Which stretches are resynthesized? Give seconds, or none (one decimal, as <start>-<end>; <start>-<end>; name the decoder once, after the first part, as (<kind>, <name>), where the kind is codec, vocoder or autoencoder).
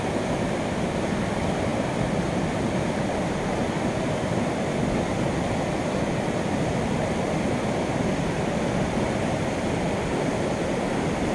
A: none